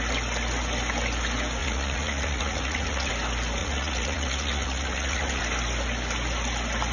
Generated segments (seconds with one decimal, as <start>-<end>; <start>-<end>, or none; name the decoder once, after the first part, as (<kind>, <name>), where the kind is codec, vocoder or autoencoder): 1.6-3.1 (vocoder, Vocos); 3.6-5.4